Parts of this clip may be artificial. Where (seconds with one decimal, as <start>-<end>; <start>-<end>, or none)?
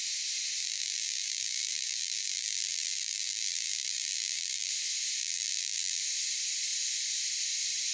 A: 0.6-4.7; 5.2-6.0